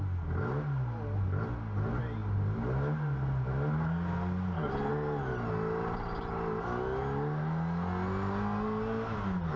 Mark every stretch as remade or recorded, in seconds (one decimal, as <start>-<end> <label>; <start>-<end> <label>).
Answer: 0.0-9.6 recorded